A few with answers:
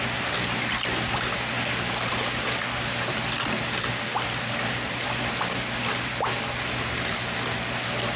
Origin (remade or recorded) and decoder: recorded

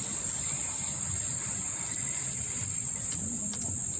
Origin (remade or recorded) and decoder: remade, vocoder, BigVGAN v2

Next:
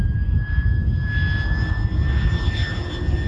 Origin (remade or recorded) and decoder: recorded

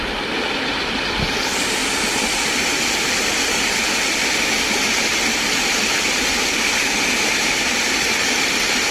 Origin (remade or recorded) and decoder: recorded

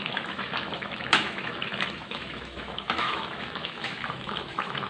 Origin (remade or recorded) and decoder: remade, autoencoder, DAC-VAE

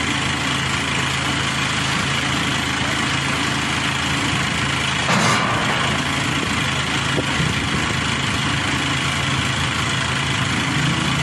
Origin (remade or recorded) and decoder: recorded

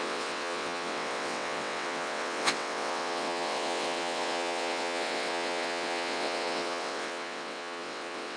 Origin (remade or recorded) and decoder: remade, vocoder, WaveNeXt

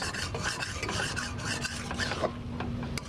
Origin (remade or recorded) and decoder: recorded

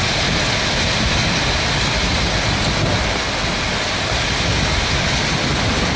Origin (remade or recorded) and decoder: recorded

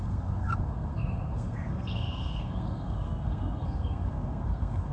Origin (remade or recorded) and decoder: remade, codec, SNAC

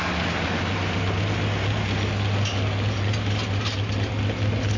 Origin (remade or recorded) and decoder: recorded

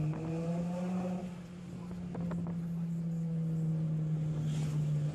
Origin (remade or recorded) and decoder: recorded